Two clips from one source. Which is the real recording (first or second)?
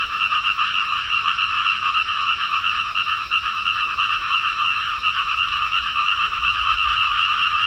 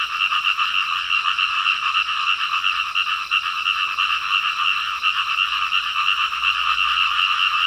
second